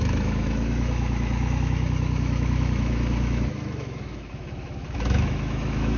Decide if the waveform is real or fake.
fake